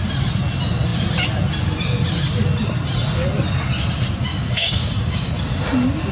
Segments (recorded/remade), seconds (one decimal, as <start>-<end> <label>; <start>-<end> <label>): 0.0-4.3 recorded; 4.3-5.3 remade; 5.3-6.1 recorded